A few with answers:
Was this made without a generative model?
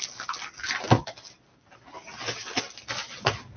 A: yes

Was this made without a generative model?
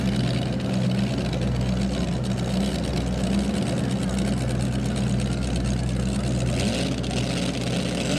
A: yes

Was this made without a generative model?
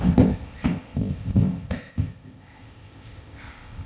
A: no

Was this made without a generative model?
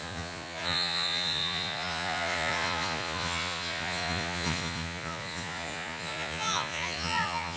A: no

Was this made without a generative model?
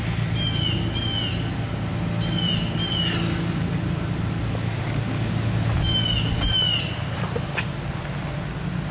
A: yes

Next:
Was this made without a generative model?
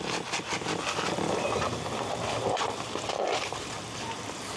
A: yes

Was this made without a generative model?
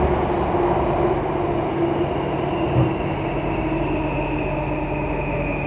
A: yes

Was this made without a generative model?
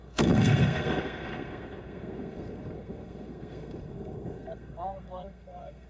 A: no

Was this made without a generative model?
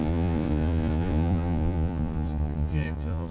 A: no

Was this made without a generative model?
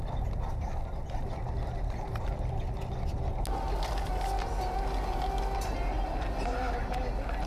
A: yes